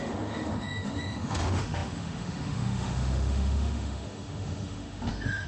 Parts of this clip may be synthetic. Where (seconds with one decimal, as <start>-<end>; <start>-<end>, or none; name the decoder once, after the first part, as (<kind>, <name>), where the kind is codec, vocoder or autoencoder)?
0.0-5.5 (autoencoder, DAC-VAE)